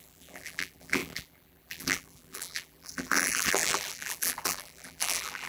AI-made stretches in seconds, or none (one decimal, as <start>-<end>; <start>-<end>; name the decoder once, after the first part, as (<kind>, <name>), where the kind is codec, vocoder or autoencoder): 0.0-5.5 (vocoder, BigVGAN v2)